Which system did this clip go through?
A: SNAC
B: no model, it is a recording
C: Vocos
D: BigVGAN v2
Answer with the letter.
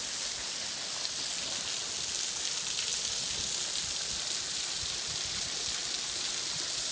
B